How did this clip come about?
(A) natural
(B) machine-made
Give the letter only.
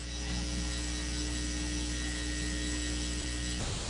A